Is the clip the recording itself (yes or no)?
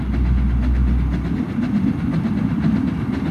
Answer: yes